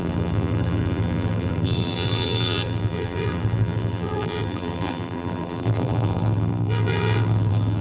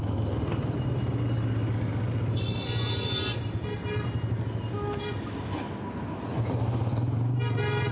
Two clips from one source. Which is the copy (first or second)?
first